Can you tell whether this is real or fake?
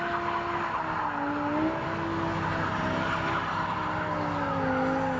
real